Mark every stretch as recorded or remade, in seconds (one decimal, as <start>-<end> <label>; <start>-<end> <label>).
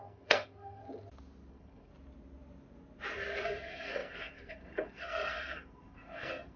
0.0-0.8 remade; 0.8-1.5 recorded; 1.5-1.9 remade; 1.9-3.4 recorded; 3.4-6.6 remade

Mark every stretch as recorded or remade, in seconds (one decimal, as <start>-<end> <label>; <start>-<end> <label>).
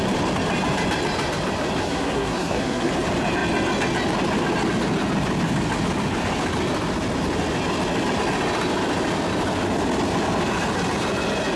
0.0-1.8 recorded; 1.8-2.9 remade; 2.9-11.6 recorded